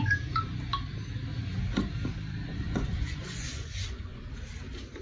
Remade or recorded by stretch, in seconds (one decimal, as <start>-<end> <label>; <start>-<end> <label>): 0.0-2.5 recorded; 2.5-4.2 remade; 4.2-5.0 recorded